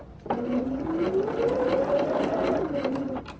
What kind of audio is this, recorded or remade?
recorded